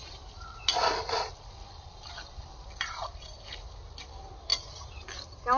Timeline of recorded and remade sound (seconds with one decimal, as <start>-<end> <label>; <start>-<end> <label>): 0.0-5.6 recorded